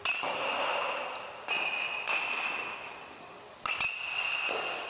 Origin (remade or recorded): recorded